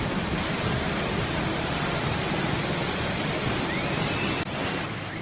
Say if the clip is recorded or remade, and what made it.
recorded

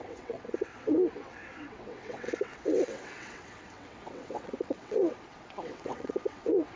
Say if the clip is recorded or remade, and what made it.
remade, vocoder, WaveNeXt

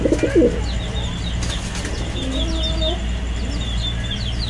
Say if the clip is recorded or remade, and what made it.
recorded